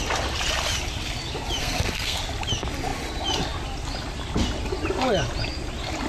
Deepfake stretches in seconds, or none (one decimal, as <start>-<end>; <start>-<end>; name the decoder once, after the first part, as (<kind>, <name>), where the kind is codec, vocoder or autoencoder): 1.6-2.2 (codec, SNAC)